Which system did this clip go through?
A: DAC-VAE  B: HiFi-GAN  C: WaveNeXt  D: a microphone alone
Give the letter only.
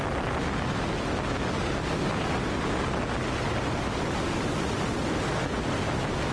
D